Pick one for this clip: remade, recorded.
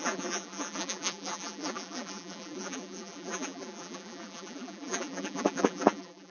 remade